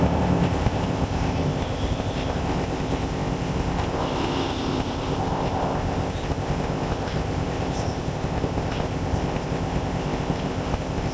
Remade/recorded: remade